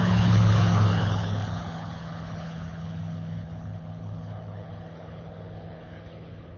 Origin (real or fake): fake